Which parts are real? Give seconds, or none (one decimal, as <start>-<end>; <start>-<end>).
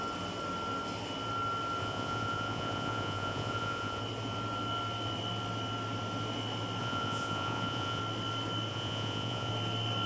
0.0-1.8; 4.0-6.8; 8.0-8.7; 9.5-10.1